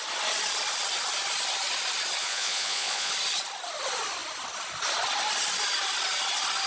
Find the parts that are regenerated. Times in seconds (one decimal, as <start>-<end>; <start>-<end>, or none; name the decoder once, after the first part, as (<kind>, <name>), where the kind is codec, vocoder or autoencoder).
2.2-3.1 (vocoder, Vocos)